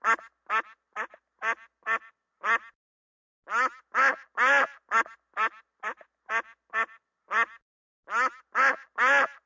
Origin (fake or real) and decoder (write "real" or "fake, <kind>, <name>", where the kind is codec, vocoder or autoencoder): real